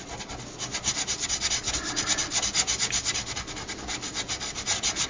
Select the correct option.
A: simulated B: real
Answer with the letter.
B